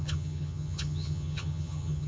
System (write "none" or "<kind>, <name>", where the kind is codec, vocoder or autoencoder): vocoder, HiFi-GAN